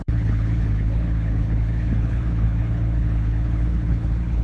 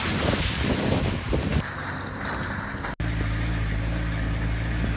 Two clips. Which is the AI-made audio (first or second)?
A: first